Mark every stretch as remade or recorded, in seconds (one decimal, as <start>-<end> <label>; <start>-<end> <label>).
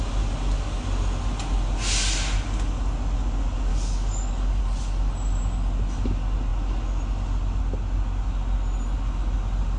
0.0-3.7 recorded; 3.7-4.6 remade; 4.6-9.8 recorded